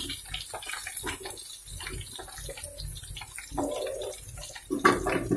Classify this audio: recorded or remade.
recorded